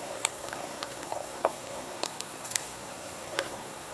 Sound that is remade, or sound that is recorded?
remade